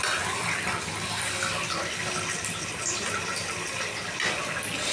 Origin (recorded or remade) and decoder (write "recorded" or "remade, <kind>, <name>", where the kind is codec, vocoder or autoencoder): recorded